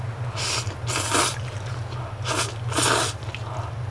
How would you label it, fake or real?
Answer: real